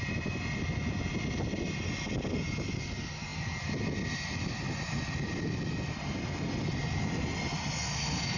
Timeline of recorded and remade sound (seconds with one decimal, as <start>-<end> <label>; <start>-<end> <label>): 0.0-8.4 recorded